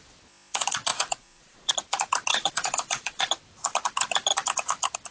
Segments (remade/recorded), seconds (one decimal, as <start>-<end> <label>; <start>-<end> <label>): 0.0-0.9 recorded; 0.9-1.7 remade; 1.7-2.3 recorded; 2.3-3.2 remade; 3.2-5.1 recorded